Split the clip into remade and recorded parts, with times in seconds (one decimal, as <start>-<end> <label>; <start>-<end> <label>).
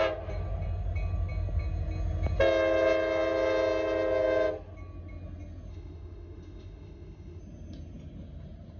0.0-5.7 recorded; 5.7-7.4 remade; 7.4-8.8 recorded